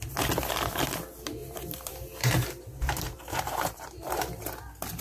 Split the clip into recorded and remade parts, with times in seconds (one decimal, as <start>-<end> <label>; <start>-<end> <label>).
0.0-1.4 recorded; 1.4-4.4 remade; 4.4-5.0 recorded